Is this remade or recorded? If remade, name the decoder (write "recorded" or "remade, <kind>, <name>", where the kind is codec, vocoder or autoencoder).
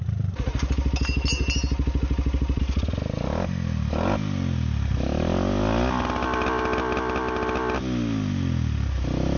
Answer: recorded